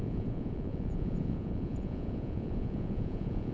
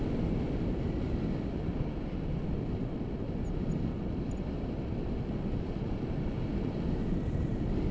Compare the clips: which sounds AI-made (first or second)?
first